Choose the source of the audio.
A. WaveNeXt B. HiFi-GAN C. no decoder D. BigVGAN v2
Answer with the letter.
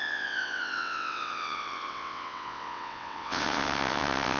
A